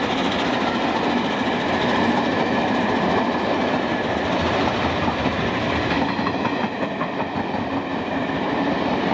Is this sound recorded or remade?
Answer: recorded